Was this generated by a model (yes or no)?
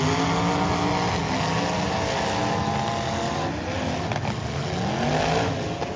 no